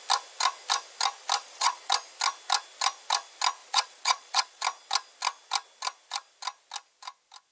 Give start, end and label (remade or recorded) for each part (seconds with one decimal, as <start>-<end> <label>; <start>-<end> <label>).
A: 0.0-1.4 recorded; 1.4-1.9 remade; 1.9-3.6 recorded; 3.6-4.6 remade; 4.6-7.5 recorded